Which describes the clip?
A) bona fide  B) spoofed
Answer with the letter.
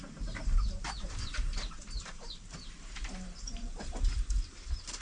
B